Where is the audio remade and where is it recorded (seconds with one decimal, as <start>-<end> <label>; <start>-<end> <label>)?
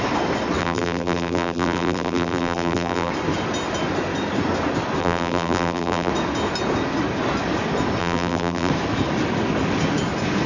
0.0-0.6 recorded; 0.6-3.1 remade; 3.1-5.0 recorded; 5.0-6.1 remade; 6.1-8.0 recorded; 8.0-8.7 remade; 8.7-10.5 recorded